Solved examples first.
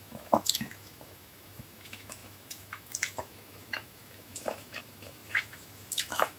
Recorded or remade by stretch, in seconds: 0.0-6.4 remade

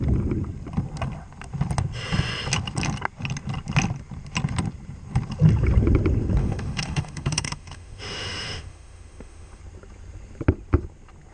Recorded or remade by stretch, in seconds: 0.0-6.4 recorded; 6.4-9.6 remade; 9.6-11.3 recorded

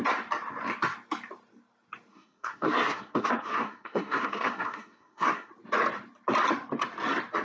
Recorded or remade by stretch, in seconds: 0.0-2.1 recorded; 2.1-5.5 remade; 5.5-7.4 recorded

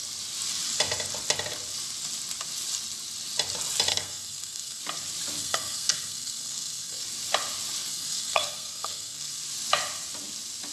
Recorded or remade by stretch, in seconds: 0.0-3.9 recorded; 3.9-4.8 remade; 4.8-5.4 recorded; 5.4-7.0 remade; 7.0-7.9 recorded; 7.9-9.4 remade; 9.4-10.7 recorded

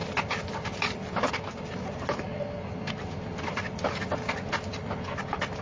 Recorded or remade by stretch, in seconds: 0.0-5.6 recorded